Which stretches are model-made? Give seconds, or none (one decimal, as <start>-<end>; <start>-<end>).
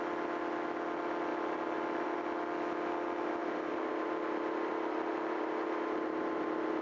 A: 1.3-2.2; 3.4-6.8